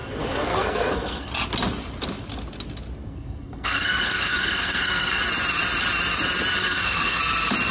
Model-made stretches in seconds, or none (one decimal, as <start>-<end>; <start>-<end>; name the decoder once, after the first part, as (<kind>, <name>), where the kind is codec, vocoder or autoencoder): 0.0-1.3 (codec, SNAC); 3.0-5.2; 6.6-7.2